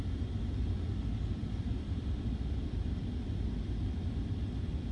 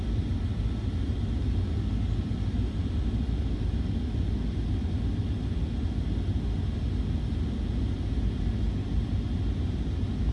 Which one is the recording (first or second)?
second